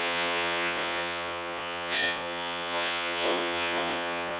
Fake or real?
fake